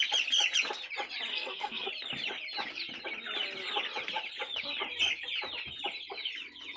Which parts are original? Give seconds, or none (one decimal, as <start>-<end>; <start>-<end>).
0.0-1.3; 1.9-6.8